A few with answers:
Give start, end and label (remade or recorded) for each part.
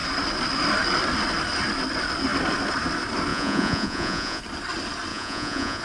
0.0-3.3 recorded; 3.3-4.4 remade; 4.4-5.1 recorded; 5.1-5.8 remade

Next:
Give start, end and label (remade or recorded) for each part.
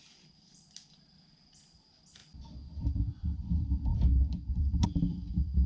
0.0-2.2 remade; 2.2-2.8 recorded; 2.8-5.7 remade